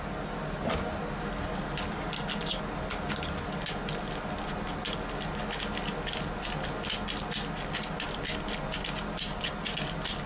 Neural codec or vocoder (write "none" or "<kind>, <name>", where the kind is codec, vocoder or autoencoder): none